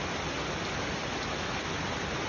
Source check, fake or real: real